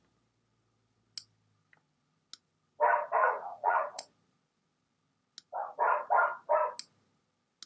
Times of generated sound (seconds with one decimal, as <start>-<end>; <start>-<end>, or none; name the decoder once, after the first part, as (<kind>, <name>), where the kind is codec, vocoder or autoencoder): 3.2-4.1 (vocoder, Vocos)